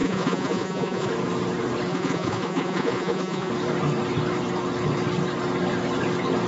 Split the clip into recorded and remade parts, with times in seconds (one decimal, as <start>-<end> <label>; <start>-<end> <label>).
0.0-1.1 remade; 1.1-1.9 recorded; 1.9-3.5 remade; 3.5-6.5 recorded